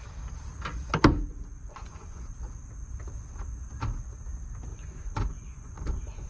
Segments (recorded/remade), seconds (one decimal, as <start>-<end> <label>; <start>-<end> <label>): 0.0-1.3 recorded; 1.3-2.2 remade; 2.2-4.7 recorded; 4.7-6.3 remade